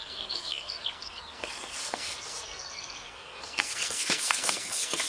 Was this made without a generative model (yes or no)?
no